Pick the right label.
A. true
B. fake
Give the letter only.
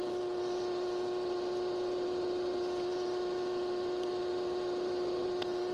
A